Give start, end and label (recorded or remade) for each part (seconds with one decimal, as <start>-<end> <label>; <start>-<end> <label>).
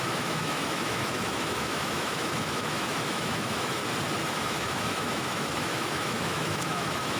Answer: 0.0-3.8 remade; 3.8-4.3 recorded; 4.3-7.2 remade